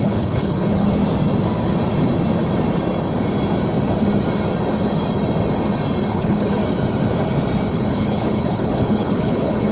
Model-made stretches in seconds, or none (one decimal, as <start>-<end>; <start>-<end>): 0.0-1.0; 6.1-6.6; 7.7-9.7